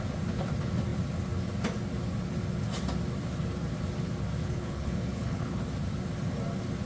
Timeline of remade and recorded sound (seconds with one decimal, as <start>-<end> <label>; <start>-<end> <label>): 0.0-4.4 recorded; 4.4-5.6 remade; 5.6-6.9 recorded